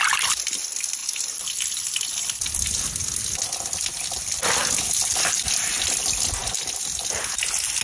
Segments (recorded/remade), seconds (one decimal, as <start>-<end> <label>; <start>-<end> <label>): 0.0-7.8 recorded